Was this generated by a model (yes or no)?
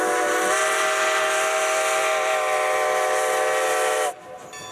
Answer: no